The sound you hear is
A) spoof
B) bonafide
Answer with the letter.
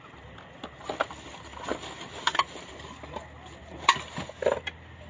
B